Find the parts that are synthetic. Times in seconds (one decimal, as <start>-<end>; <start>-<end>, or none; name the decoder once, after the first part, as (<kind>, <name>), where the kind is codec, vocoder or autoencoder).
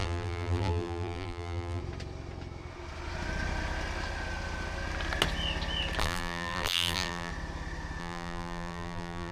0.0-1.8 (vocoder, BigVGAN v2); 6.0-7.3; 8.0-9.3